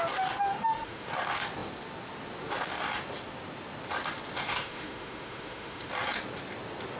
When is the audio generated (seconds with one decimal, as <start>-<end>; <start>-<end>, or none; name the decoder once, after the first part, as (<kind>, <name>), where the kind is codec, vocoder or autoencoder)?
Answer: 0.5-1.1 (autoencoder, DAC-VAE); 4.5-5.9